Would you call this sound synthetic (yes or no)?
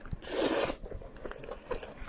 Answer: yes